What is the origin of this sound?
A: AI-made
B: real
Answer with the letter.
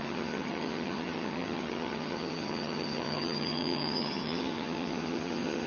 A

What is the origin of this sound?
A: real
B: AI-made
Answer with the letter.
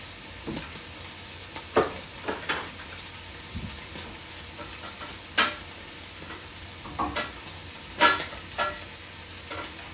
A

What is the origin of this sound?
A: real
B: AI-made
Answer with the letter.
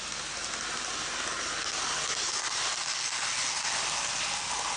A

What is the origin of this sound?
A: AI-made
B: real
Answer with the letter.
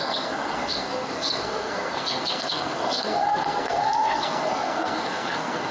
A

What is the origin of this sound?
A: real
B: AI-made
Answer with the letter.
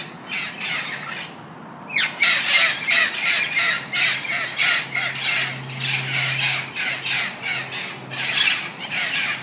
A